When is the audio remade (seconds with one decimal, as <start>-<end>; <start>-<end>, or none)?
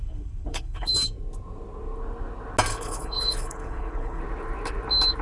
0.0-0.9; 2.7-4.2